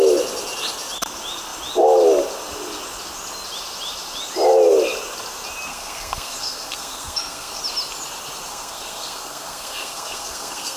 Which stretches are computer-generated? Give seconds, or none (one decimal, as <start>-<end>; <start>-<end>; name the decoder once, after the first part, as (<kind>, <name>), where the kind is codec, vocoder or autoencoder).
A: 5.7-7.6 (codec, SNAC); 8.5-10.8